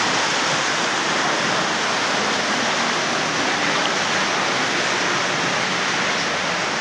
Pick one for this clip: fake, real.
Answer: real